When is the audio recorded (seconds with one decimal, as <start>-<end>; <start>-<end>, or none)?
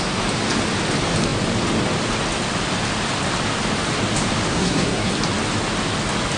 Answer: 0.0-4.5; 5.1-6.4